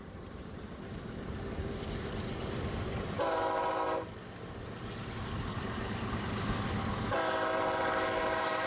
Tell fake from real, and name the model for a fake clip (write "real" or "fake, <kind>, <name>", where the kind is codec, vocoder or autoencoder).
fake, vocoder, BigVGAN v2